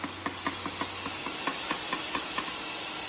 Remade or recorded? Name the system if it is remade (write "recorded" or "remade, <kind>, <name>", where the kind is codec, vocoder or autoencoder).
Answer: recorded